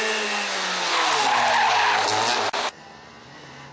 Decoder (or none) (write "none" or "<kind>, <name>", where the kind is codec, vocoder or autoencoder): none